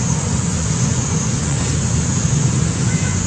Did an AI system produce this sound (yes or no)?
yes